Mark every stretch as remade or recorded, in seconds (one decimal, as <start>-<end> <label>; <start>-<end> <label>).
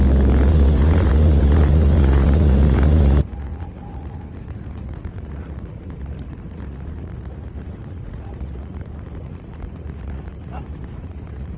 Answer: 0.0-0.5 recorded; 0.5-11.6 remade